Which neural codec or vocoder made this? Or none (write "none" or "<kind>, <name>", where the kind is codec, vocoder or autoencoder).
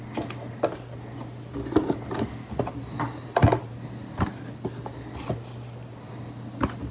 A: none